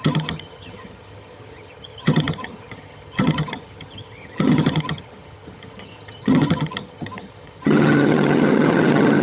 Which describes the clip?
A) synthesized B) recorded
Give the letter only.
A